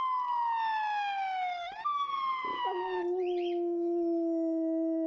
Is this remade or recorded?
recorded